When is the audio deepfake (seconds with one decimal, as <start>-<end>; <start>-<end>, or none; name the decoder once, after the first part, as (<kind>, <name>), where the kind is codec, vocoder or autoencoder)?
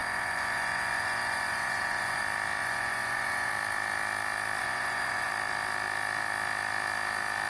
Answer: 0.0-2.2 (vocoder, Vocos); 2.6-3.5; 4.6-5.3